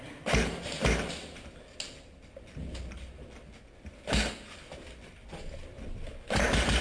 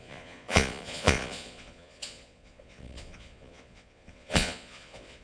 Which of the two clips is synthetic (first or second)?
second